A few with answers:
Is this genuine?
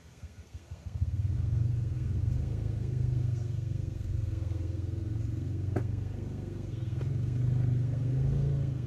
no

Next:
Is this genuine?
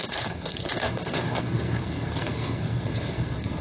no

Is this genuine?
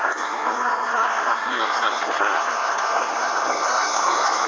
no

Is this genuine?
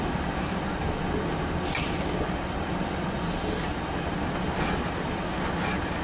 yes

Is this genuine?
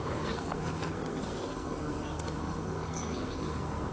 no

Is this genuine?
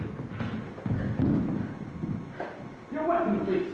yes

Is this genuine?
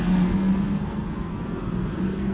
no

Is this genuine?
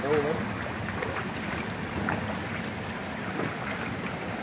yes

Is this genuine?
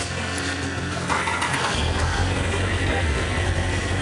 no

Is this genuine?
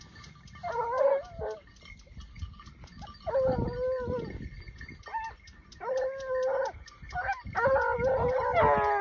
yes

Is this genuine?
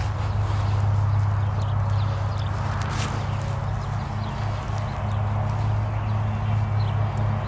yes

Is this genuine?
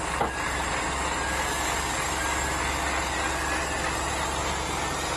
yes